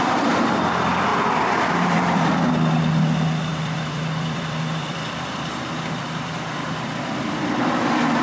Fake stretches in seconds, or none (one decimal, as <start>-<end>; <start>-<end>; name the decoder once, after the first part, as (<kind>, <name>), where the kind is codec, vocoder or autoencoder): 1.1-2.5 (vocoder, BigVGAN v2); 3.5-8.2